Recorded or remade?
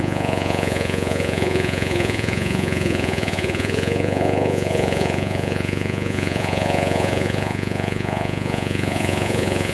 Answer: remade